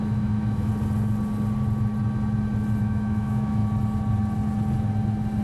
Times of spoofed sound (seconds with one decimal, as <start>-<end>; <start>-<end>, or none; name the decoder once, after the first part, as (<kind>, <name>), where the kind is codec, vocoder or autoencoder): 0.0-0.7 (autoencoder, DAC-VAE); 2.8-3.6